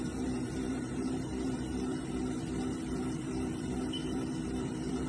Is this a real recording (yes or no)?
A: no